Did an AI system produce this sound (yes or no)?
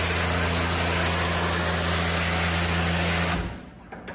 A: no